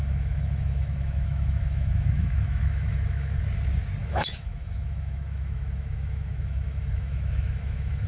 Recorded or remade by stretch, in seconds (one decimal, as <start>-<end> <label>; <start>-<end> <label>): 0.0-3.4 remade; 3.4-4.0 recorded; 4.0-8.1 remade